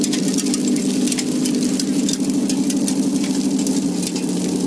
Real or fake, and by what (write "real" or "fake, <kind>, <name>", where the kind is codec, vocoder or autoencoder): real